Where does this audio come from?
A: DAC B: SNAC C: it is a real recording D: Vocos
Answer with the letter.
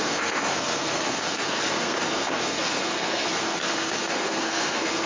B